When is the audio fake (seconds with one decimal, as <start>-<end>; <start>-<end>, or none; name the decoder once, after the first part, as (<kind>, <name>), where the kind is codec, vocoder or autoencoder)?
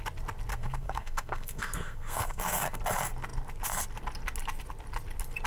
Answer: 0.5-2.8 (codec, SNAC)